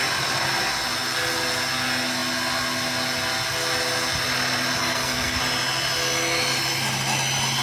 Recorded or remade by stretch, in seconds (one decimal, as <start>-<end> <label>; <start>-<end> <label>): 0.0-4.8 recorded; 4.8-5.4 remade; 5.4-7.6 recorded